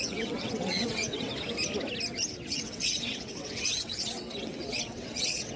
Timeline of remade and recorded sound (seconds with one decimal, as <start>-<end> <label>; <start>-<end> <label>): 0.0-1.3 remade; 1.3-2.5 recorded; 2.5-5.6 remade